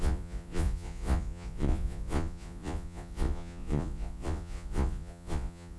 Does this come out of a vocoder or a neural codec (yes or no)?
yes